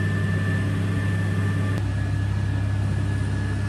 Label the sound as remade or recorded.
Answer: recorded